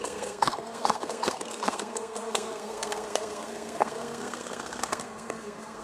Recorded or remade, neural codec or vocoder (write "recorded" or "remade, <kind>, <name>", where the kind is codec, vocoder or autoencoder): remade, codec, SNAC